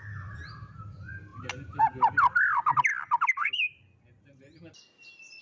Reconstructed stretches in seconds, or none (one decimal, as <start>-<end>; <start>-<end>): 2.9-3.5